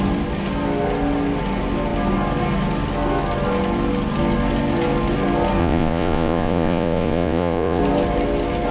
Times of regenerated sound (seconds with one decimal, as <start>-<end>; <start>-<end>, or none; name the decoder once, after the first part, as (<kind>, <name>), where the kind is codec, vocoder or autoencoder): 5.6-7.8 (vocoder, Vocos)